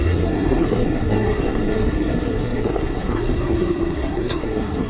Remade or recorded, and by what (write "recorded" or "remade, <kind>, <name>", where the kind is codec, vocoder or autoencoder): remade, codec, SNAC